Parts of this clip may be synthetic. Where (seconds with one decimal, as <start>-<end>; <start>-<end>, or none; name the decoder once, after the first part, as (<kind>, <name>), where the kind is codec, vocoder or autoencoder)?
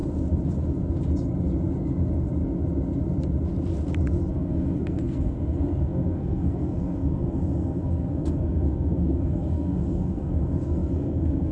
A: 4.3-11.5 (codec, SNAC)